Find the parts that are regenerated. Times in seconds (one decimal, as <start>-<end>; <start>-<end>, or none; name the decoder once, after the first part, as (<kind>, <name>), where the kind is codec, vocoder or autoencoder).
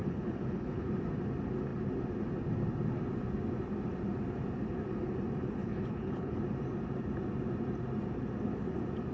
0.0-0.9 (codec, HILCodec); 5.6-6.4